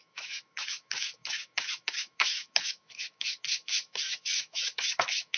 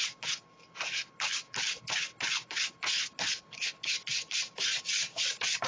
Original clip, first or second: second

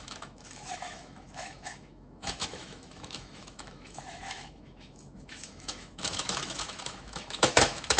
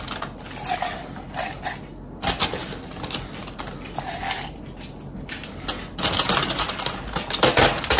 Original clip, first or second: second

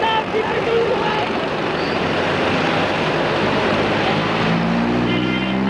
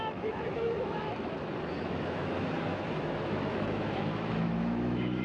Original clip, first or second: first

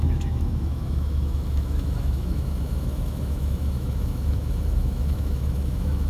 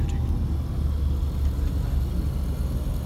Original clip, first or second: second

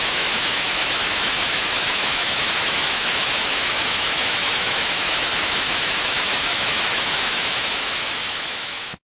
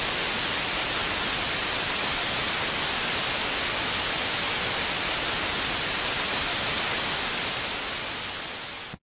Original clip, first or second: second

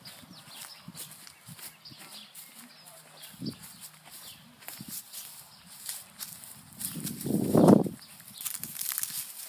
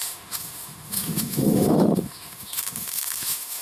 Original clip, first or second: first